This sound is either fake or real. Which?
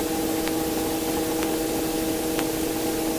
real